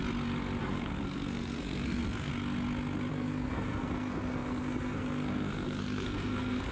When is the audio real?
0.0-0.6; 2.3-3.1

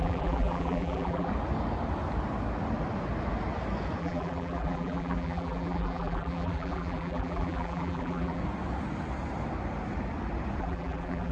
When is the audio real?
1.3-4.0; 8.4-10.6